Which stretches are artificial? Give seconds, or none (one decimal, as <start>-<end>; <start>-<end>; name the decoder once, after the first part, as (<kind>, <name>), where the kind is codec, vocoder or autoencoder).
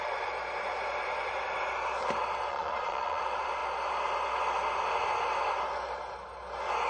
2.5-3.2 (vocoder, Vocos)